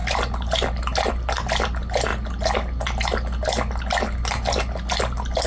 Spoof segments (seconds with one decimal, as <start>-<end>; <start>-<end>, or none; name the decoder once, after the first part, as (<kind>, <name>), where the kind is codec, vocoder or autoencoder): none